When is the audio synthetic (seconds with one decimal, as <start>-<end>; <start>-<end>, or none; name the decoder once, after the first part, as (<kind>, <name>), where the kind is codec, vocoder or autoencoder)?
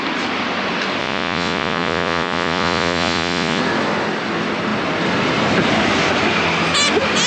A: 1.0-3.6 (vocoder, Vocos)